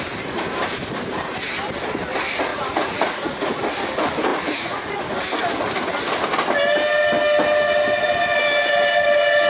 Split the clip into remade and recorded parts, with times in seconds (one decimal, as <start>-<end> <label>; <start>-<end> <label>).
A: 0.0-2.5 recorded; 2.5-3.6 remade; 3.6-4.3 recorded; 4.3-5.0 remade; 5.0-9.5 recorded